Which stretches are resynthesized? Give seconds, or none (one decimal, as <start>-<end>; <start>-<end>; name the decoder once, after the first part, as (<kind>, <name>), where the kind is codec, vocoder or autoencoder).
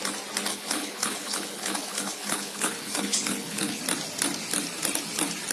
0.5-3.8 (codec, HILCodec)